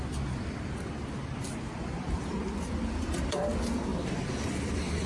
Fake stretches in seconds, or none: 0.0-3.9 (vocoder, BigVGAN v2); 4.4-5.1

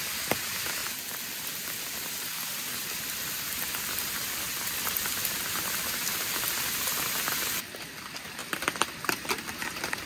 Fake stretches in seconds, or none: 0.8-2.1 (vocoder, BigVGAN v2); 8.4-9.5

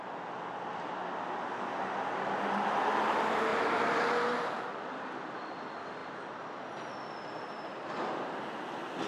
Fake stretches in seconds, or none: 3.5-5.1 (vocoder, BigVGAN v2)

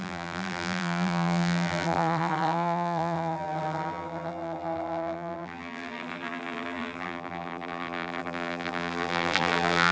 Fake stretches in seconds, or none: 0.0-9.9 (vocoder, BigVGAN v2)

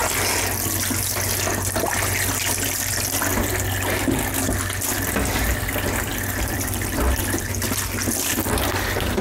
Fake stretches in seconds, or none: 6.1-8.3 (vocoder, BigVGAN v2)